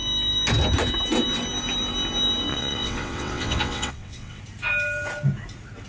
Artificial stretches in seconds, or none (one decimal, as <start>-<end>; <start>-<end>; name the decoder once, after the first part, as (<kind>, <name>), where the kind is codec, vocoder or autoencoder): 2.5-4.4 (vocoder, WaveNeXt)